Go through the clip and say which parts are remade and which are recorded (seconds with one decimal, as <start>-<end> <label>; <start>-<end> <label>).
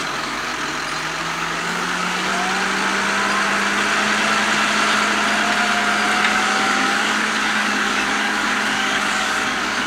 0.0-0.5 remade; 0.5-1.2 recorded; 1.2-2.3 remade; 2.3-6.3 recorded; 6.3-9.9 remade